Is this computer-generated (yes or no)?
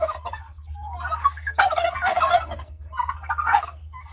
yes